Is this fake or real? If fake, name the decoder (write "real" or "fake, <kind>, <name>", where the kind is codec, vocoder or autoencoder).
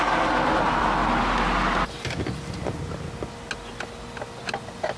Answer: real